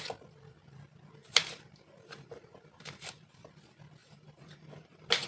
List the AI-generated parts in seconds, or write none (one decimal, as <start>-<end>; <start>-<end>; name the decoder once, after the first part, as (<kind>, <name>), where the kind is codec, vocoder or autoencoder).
1.2-3.4 (vocoder, BigVGAN v2); 4.0-5.3